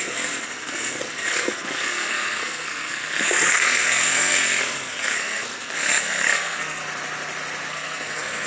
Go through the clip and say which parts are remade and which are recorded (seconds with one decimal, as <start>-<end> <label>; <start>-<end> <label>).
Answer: 0.0-6.8 remade; 6.8-7.7 recorded; 7.7-8.5 remade